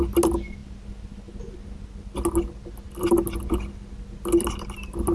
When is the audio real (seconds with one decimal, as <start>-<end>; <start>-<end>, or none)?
0.0-5.1